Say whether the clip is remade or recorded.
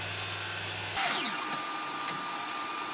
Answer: recorded